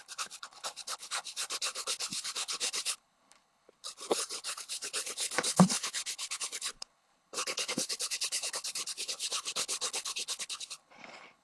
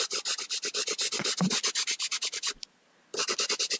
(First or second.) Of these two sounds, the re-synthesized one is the first